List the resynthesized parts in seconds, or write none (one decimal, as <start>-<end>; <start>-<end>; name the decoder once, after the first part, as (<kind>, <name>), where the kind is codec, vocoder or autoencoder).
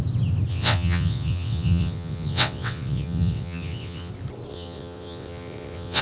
0.5-4.1 (vocoder, WaveNeXt); 4.5-6.0